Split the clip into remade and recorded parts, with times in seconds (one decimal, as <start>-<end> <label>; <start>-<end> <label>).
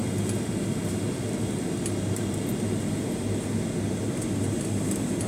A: 0.0-5.3 recorded